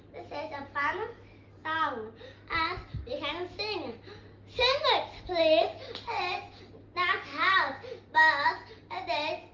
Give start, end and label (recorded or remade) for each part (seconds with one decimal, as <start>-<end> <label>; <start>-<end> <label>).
0.0-9.5 recorded